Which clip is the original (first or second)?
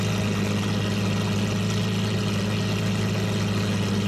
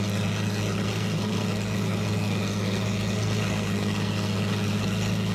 first